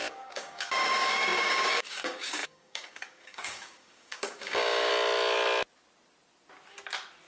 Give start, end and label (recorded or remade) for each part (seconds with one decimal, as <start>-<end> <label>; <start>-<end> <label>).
0.0-4.9 remade; 4.9-7.3 recorded